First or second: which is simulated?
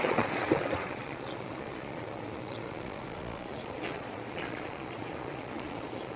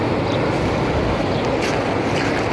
first